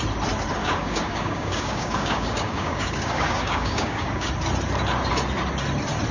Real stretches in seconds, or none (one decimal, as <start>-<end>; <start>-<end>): 0.0-0.6; 4.3-6.1